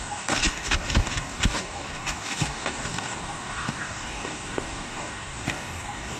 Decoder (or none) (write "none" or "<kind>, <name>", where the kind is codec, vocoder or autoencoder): codec, DAC